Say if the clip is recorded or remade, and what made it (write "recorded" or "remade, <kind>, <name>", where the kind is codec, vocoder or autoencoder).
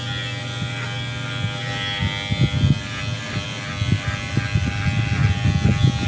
recorded